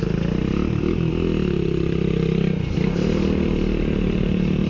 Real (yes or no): yes